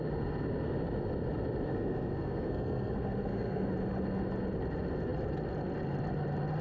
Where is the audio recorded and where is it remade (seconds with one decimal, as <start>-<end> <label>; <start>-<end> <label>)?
0.0-1.7 recorded; 1.7-3.7 remade; 3.7-6.6 recorded